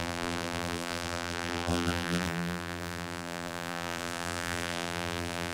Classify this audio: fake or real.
fake